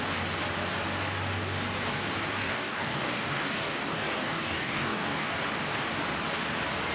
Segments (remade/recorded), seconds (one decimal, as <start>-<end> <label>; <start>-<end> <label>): 0.0-2.3 recorded; 2.3-5.3 remade; 5.3-6.9 recorded